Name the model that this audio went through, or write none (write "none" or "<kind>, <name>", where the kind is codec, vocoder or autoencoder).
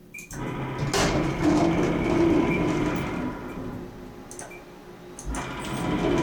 none